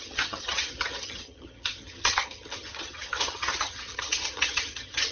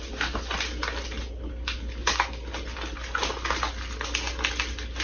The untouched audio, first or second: second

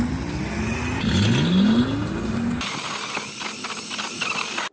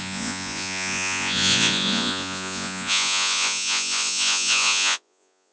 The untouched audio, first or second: first